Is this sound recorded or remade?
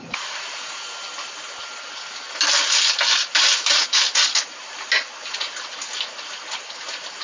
recorded